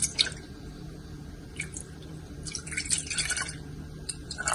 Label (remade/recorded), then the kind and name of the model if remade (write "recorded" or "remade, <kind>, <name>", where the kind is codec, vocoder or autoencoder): remade, vocoder, BigVGAN v2